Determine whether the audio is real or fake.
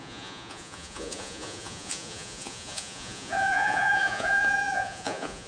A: fake